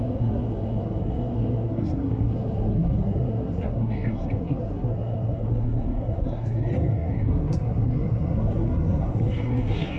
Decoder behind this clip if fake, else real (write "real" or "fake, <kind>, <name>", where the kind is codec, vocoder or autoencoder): fake, codec, SNAC